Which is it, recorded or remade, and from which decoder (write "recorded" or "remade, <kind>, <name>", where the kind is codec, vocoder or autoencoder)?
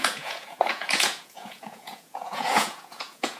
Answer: remade, vocoder, Vocos